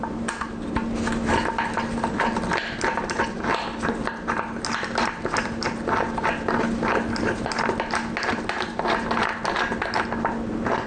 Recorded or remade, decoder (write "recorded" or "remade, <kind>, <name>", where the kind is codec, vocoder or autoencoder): recorded